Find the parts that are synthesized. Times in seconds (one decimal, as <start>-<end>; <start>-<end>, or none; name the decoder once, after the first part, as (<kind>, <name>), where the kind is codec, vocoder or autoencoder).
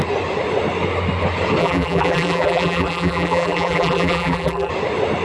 1.6-4.7 (vocoder, BigVGAN v2)